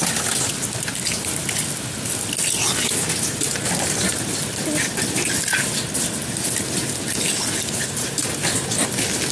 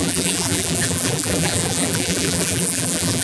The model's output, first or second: second